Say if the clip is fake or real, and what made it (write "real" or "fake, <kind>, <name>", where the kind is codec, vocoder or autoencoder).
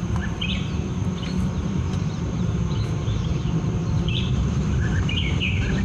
fake, vocoder, BigVGAN v2